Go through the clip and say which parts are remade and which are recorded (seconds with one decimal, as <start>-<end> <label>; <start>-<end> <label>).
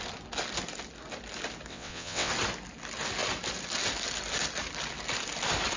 0.0-1.7 recorded; 1.7-2.3 remade; 2.3-5.8 recorded